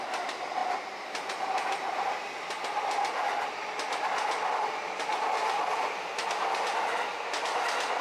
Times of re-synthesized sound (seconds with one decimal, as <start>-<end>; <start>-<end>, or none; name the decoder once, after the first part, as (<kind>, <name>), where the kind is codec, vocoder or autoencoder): none